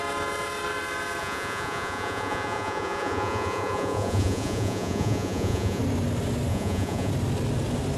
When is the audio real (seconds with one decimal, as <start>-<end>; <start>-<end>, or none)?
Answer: 0.0-1.2; 5.8-6.5; 7.1-8.0